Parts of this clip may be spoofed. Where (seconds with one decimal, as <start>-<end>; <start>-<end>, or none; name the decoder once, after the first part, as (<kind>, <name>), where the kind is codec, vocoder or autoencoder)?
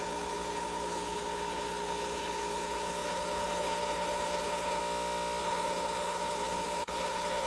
0.0-4.8 (codec, HILCodec); 5.4-7.5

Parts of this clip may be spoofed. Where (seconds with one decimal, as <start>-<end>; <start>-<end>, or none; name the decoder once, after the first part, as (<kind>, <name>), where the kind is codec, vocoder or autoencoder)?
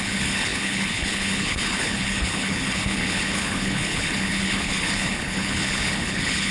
0.0-6.5 (codec, HILCodec)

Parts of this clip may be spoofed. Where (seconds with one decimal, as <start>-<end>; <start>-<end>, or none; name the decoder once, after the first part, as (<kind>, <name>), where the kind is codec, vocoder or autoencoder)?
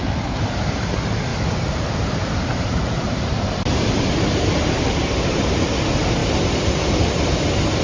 1.3-5.4 (vocoder, BigVGAN v2)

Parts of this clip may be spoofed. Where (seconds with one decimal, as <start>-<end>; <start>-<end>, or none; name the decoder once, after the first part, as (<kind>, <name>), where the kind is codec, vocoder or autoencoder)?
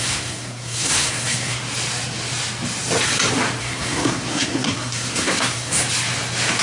0.0-1.6 (codec, SNAC); 3.6-5.8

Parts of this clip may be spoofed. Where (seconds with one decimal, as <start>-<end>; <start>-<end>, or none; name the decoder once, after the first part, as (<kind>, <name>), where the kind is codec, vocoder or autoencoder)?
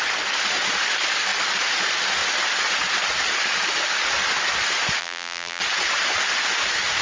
5.0-5.6 (vocoder, BigVGAN v2)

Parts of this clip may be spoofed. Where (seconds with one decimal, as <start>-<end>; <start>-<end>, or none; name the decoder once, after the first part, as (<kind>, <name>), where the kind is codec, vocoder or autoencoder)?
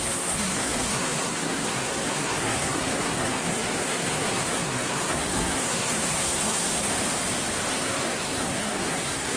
0.0-6.9 (codec, SNAC); 7.7-9.4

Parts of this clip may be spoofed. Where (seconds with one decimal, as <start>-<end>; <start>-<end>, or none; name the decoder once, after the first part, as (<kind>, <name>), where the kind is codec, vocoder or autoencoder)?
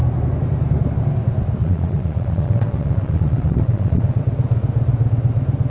1.6-4.2 (vocoder, Vocos)